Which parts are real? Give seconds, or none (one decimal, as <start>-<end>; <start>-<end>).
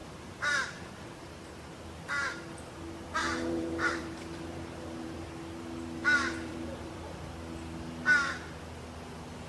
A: 1.5-3.2; 5.2-6.0; 7.3-9.5